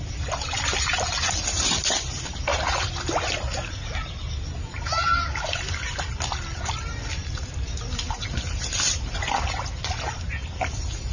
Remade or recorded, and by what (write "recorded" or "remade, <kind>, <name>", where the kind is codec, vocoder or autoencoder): recorded